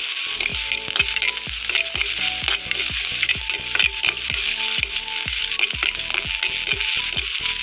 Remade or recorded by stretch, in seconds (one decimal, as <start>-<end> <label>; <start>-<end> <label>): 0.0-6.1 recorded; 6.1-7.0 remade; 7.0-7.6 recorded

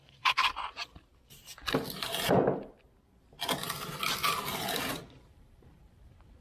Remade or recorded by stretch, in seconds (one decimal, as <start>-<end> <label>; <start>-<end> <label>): 0.0-1.1 remade; 1.1-4.9 recorded; 4.9-6.4 remade

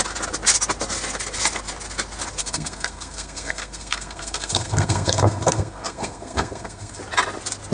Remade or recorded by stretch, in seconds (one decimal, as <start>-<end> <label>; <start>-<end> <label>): 0.0-2.4 recorded; 2.4-7.0 remade; 7.0-7.7 recorded

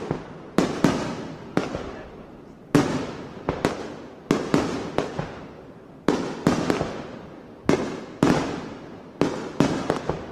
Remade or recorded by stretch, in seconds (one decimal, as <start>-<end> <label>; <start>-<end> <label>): 0.0-0.6 recorded; 0.6-5.2 remade; 5.2-10.3 recorded

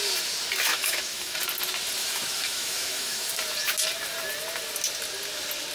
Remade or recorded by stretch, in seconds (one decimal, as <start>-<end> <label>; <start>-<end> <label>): 0.0-0.7 recorded; 0.7-1.4 remade; 1.4-2.0 recorded; 2.0-3.3 remade; 3.3-5.7 recorded

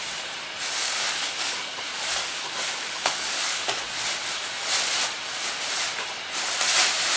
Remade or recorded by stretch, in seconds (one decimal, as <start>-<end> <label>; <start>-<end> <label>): 0.0-0.8 recorded; 0.8-3.8 remade; 3.8-7.2 recorded